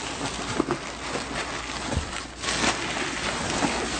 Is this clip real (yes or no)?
yes